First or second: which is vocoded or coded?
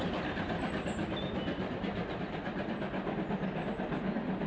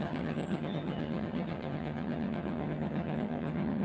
second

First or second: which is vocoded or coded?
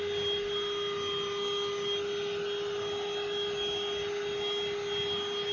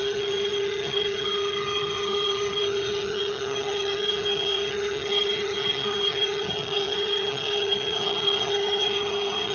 second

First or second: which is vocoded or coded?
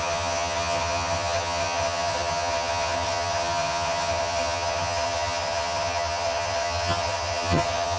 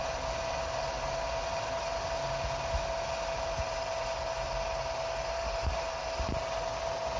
first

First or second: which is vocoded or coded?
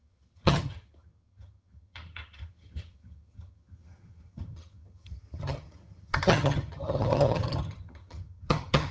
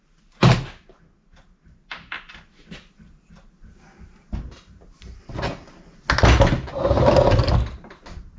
first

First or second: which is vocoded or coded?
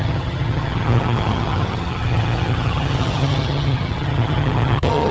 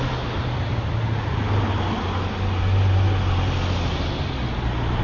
first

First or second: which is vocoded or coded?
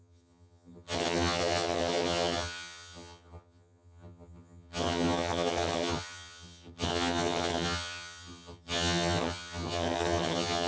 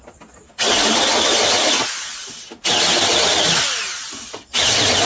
first